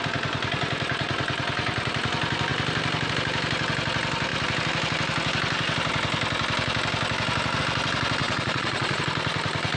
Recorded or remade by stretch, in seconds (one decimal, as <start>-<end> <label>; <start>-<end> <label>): 0.0-8.2 recorded; 8.2-9.0 remade; 9.0-9.8 recorded